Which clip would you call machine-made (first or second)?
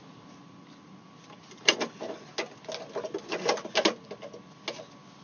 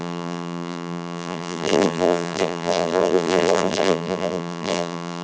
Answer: second